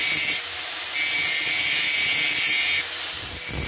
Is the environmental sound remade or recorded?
recorded